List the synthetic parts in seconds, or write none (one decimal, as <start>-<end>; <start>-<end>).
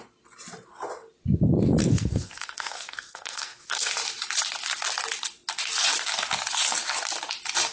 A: 1.8-3.9